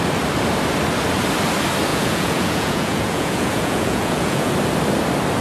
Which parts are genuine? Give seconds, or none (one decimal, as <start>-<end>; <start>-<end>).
0.0-1.9; 4.5-5.4